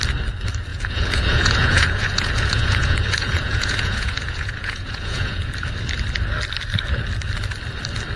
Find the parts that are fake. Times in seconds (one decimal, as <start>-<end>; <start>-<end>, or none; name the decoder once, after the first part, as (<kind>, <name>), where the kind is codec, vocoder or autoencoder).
0.7-5.5 (vocoder, Vocos)